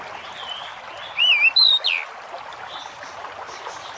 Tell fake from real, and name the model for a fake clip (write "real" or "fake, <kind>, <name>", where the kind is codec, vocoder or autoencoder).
real